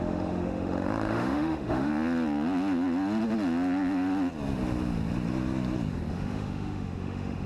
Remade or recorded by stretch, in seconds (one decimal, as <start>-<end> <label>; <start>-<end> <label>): 0.0-1.9 remade; 1.9-6.1 recorded; 6.1-7.5 remade